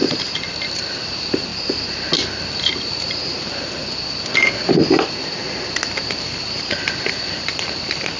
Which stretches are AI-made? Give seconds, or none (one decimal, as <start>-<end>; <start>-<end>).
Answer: 0.0-1.5; 2.4-3.8; 6.6-8.2

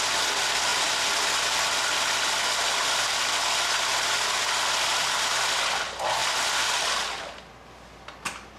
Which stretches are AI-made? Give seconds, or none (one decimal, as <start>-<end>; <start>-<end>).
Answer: none